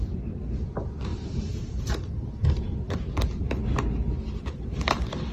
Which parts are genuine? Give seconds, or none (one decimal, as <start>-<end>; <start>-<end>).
0.0-1.1; 2.7-5.3